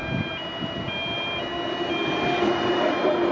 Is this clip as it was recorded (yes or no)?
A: yes